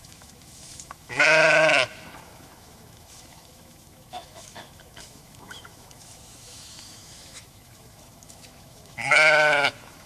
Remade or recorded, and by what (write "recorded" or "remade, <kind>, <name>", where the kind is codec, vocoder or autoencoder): remade, autoencoder, DAC-VAE